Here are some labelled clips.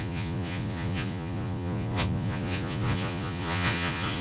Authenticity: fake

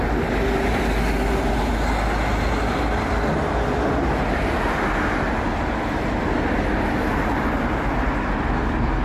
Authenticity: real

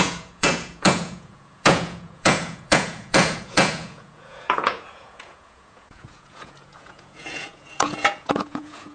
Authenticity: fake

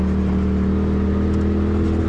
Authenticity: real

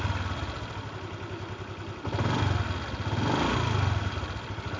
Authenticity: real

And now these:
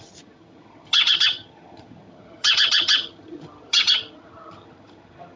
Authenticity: fake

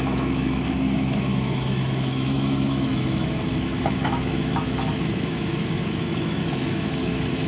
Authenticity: fake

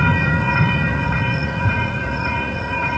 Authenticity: fake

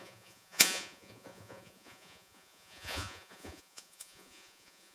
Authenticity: fake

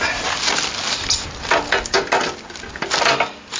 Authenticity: real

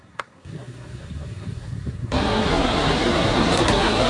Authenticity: fake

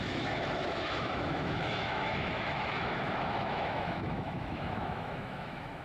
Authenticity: fake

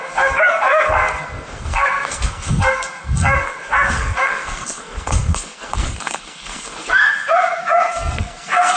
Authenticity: fake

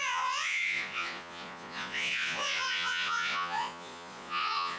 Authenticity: fake